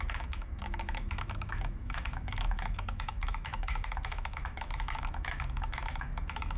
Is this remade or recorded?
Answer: remade